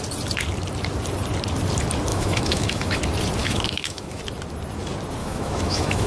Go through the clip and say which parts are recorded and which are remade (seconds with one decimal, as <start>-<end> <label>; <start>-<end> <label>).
0.0-2.1 recorded; 2.1-3.0 remade; 3.0-3.4 recorded; 3.4-4.2 remade; 4.2-5.2 recorded; 5.2-6.1 remade